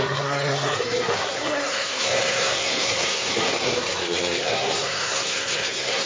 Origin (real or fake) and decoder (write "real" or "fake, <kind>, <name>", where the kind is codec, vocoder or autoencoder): fake, codec, SNAC